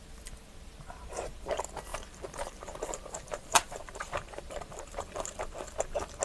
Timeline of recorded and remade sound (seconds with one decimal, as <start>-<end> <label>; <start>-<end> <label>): 0.0-1.9 recorded; 1.9-5.6 remade; 5.6-6.2 recorded